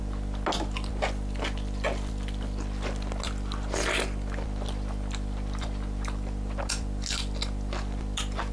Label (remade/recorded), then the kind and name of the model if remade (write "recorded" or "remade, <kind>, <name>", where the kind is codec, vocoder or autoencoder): recorded